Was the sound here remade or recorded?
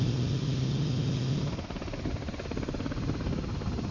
recorded